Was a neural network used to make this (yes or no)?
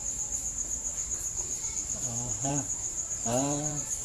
yes